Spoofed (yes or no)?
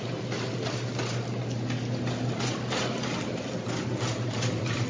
no